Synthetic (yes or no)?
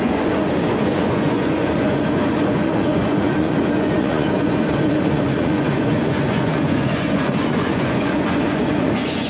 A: yes